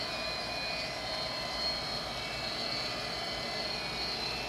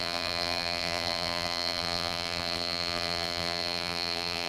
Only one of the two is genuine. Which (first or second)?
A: first